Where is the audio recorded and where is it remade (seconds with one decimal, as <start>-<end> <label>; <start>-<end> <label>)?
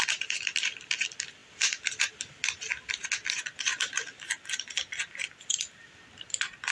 0.0-1.4 recorded; 1.4-2.1 remade; 2.1-3.7 recorded; 3.7-6.0 remade; 6.0-6.7 recorded